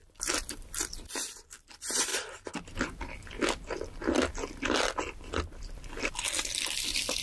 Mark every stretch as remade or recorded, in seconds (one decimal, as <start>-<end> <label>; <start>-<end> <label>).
0.0-2.1 remade; 2.1-6.4 recorded; 6.4-7.2 remade